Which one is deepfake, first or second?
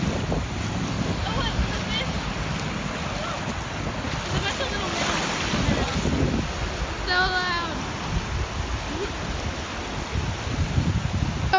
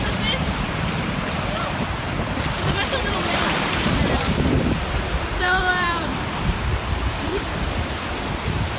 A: second